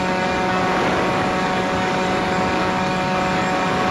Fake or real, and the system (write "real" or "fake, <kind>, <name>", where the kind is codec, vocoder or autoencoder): fake, codec, DAC